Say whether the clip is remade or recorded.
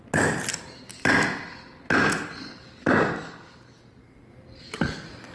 recorded